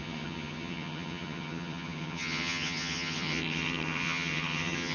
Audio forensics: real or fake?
fake